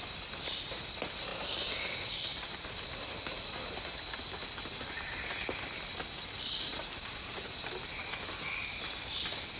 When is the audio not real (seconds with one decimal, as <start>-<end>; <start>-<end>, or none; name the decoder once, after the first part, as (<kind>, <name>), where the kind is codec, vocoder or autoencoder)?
none